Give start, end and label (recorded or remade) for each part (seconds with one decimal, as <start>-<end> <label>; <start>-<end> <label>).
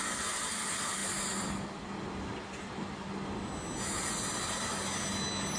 0.0-5.6 recorded